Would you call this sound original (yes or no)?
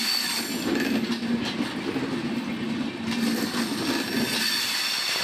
yes